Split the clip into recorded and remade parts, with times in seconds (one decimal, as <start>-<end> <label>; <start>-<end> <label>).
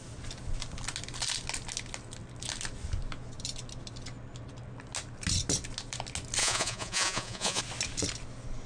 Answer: 0.0-6.4 recorded; 6.4-7.6 remade; 7.6-8.7 recorded